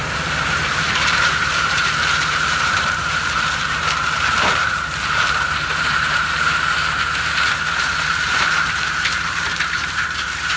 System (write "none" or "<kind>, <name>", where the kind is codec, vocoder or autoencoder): vocoder, BigVGAN v2